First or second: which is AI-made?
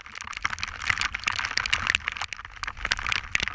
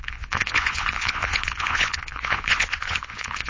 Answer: second